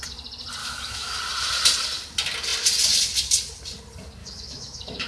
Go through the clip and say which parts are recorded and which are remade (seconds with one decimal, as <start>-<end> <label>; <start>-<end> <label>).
0.0-0.6 recorded; 0.6-1.2 remade; 1.2-4.2 recorded; 4.2-5.1 remade